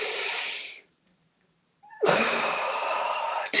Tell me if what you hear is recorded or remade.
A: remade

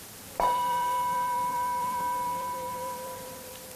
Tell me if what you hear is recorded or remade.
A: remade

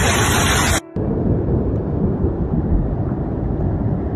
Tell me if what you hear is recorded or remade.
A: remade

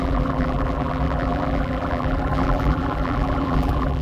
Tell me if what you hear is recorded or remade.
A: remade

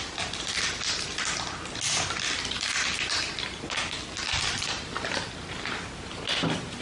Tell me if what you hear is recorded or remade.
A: recorded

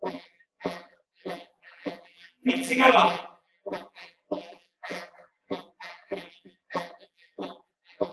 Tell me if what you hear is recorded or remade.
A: remade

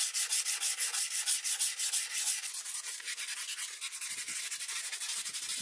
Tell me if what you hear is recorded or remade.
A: recorded